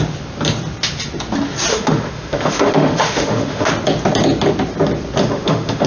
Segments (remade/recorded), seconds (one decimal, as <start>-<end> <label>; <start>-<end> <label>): 0.0-1.7 recorded; 1.7-3.7 remade; 3.7-5.2 recorded; 5.2-5.9 remade